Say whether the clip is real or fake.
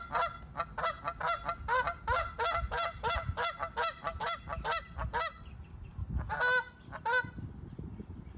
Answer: real